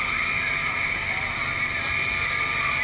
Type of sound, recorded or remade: recorded